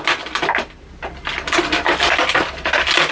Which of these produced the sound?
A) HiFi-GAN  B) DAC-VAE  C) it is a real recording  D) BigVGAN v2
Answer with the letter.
C